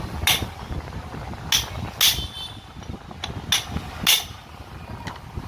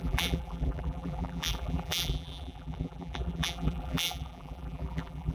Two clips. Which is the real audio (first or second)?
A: first